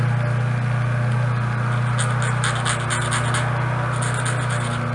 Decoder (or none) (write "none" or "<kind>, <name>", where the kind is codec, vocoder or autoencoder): none